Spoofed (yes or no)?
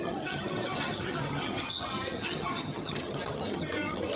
yes